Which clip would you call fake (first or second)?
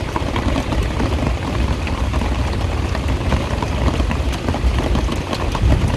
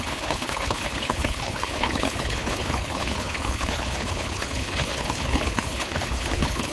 second